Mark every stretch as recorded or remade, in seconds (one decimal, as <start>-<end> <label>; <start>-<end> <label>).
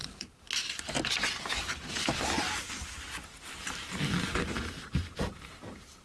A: 0.0-3.6 recorded; 3.6-6.0 remade